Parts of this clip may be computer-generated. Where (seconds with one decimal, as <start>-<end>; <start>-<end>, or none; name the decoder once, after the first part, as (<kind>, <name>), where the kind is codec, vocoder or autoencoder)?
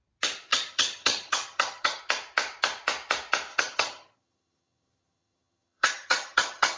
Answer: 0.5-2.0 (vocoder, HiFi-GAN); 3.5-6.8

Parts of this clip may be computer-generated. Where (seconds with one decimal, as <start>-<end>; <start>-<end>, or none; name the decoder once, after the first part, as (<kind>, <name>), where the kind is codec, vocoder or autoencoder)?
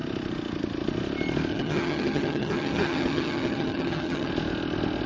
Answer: 1.5-4.3 (vocoder, HiFi-GAN)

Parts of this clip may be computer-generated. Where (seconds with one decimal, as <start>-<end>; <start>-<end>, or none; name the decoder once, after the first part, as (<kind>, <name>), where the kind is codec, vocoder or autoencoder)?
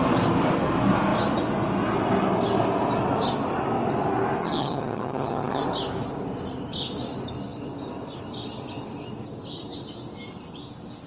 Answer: 4.4-5.6 (vocoder, HiFi-GAN)